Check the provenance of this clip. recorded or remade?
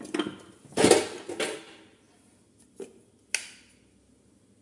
recorded